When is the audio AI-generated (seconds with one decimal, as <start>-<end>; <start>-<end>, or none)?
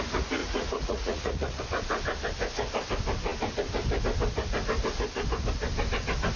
0.4-1.6